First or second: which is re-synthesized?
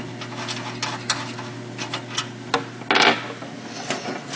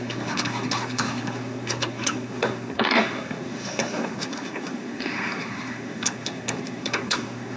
second